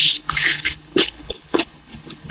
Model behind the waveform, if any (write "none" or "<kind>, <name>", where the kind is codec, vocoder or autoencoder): codec, HILCodec